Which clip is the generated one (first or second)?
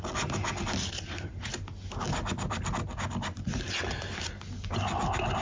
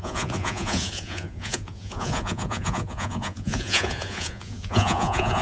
second